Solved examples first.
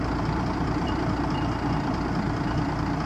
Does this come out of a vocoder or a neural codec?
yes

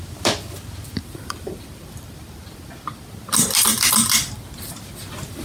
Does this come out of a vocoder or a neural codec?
yes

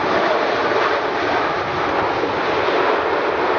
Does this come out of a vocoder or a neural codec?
no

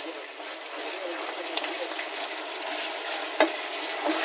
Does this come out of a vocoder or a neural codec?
no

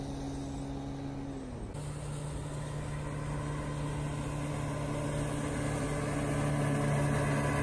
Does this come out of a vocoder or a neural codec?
no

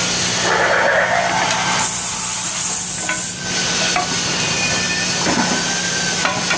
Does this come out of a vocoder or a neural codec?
no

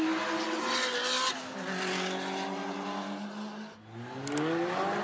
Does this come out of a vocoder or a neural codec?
no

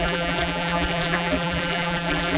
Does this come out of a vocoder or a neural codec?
yes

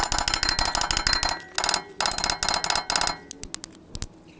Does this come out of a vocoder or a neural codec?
no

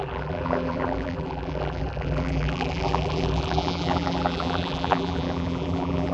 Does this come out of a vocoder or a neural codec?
yes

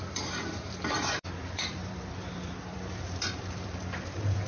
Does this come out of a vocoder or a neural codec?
yes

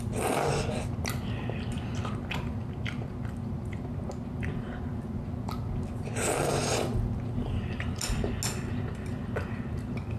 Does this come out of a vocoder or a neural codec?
no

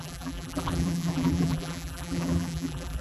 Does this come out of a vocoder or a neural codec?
yes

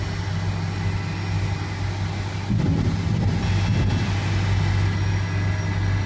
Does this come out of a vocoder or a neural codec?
no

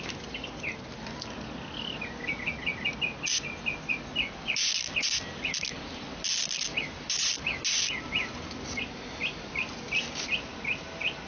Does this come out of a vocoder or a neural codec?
no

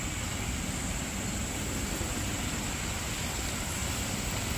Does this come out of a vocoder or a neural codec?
no